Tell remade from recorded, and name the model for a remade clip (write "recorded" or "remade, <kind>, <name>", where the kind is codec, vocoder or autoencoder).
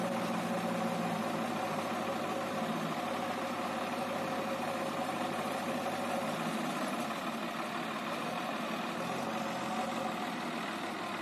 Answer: recorded